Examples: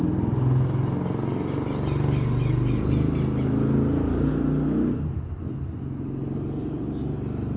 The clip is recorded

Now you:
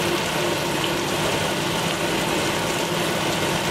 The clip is recorded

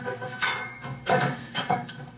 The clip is remade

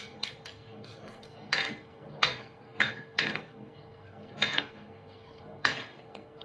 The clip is remade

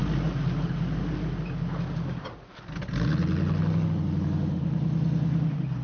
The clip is recorded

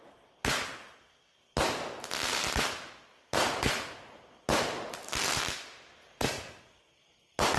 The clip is recorded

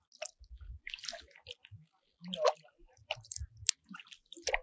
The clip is recorded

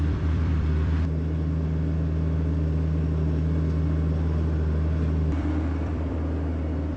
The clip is remade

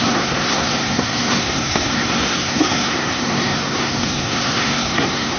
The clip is remade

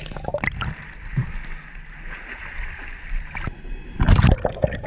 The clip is recorded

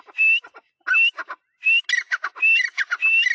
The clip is recorded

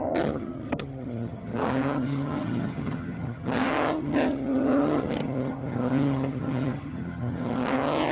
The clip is remade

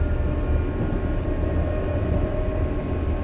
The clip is recorded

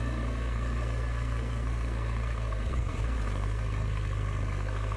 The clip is remade